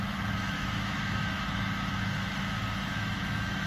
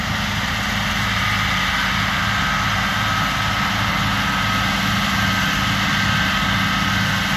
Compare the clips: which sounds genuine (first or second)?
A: second